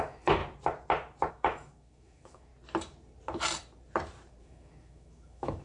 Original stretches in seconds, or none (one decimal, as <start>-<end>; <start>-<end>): 0.4-1.3; 2.5-4.4